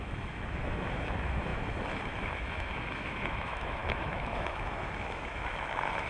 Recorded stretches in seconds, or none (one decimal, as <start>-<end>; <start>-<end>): none